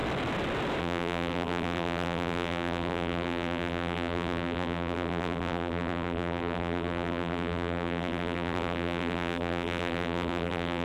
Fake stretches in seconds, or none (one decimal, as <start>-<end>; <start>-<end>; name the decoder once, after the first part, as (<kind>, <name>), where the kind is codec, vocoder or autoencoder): 0.8-10.8 (vocoder, BigVGAN v2)